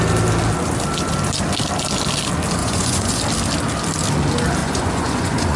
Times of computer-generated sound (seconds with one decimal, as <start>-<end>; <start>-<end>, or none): 2.6-3.2; 4.6-5.6